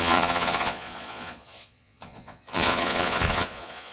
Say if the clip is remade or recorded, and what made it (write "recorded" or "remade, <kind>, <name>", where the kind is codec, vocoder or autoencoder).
remade, vocoder, Vocos